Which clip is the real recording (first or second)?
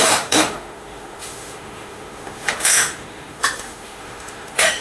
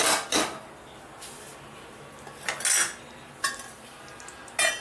second